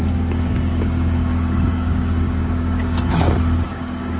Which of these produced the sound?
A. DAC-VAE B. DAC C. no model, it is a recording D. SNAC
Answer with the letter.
B